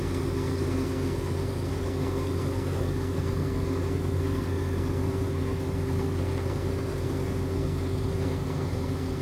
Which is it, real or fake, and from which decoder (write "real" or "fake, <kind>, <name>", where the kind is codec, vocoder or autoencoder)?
fake, codec, SNAC